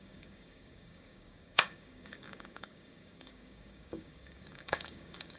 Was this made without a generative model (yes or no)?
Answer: no